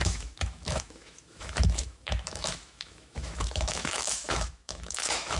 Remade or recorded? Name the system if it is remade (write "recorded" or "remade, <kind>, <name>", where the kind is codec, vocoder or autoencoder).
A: remade, autoencoder, DAC-VAE